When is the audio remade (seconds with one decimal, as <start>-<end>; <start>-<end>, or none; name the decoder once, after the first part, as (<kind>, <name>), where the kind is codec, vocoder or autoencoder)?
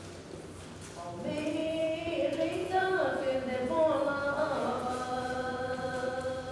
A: 1.6-3.8 (vocoder, Vocos); 4.4-6.1